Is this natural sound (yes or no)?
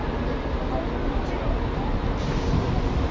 yes